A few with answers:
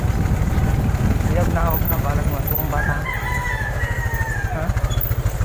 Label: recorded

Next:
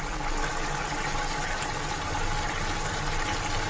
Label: recorded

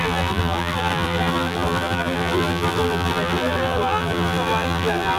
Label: remade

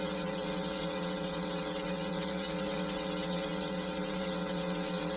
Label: remade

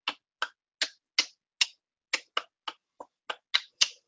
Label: recorded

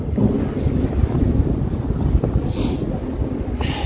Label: recorded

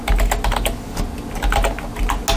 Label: recorded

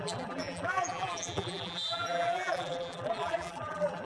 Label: remade